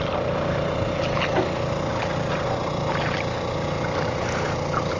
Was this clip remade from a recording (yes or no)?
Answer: no